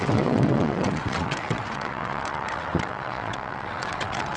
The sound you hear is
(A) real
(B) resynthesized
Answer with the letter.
B